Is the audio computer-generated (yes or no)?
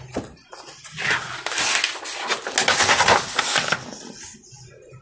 no